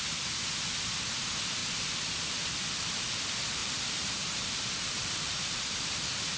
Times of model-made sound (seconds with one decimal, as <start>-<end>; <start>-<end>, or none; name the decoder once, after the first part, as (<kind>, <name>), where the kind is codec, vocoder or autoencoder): 1.6-2.4 (vocoder, BigVGAN v2); 3.6-5.8